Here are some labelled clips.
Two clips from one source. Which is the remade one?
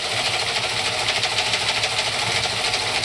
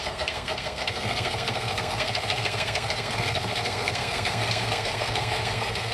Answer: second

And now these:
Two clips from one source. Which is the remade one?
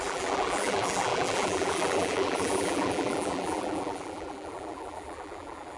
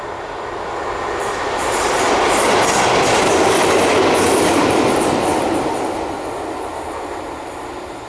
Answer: first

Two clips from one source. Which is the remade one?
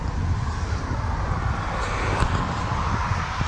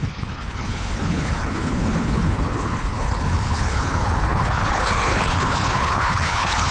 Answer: second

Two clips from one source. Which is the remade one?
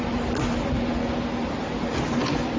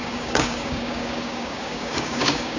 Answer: second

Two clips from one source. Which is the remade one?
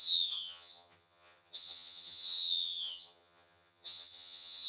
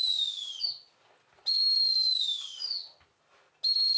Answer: first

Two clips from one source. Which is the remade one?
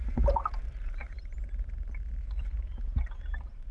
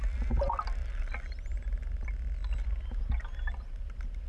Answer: first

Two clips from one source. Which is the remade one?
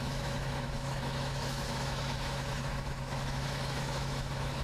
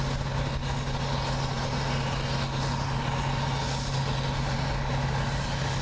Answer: first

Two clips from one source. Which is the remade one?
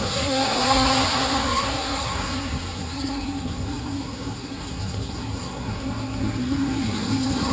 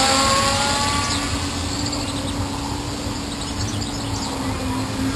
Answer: first